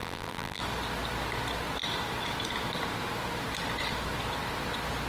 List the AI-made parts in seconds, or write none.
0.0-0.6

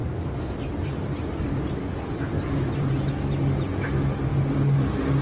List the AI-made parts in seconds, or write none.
0.0-3.1; 4.3-5.2

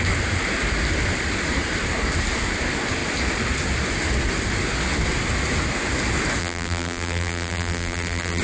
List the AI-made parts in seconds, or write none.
6.4-8.4